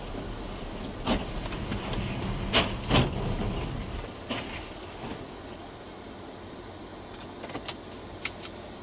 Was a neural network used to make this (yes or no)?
no